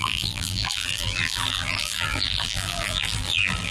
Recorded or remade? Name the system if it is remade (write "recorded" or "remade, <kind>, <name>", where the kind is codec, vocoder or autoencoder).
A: remade, vocoder, BigVGAN v2